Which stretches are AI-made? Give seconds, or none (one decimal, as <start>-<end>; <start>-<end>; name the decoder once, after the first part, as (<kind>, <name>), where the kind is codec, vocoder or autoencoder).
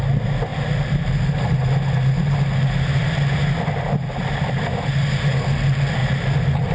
none